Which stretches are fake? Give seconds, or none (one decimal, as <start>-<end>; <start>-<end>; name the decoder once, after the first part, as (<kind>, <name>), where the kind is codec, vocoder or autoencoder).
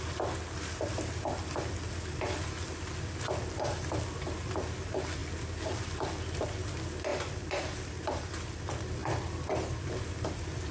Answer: none